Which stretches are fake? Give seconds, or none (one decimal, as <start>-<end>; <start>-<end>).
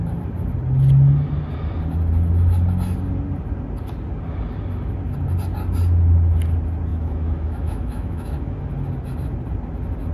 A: 6.9-8.6